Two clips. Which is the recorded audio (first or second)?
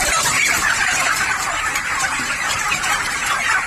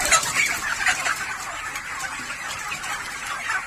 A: second